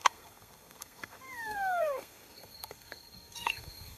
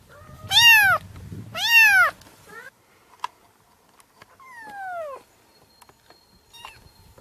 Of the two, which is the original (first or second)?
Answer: second